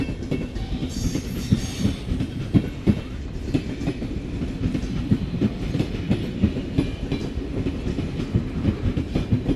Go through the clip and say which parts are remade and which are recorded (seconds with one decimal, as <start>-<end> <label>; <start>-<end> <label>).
0.0-0.8 recorded; 0.8-2.4 remade; 2.4-4.7 recorded; 4.7-5.9 remade; 5.9-9.6 recorded